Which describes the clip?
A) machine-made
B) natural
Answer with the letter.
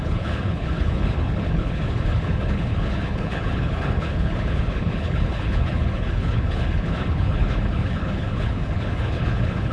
A